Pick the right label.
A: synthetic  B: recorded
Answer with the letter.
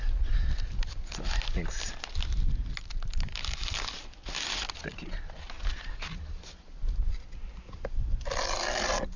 B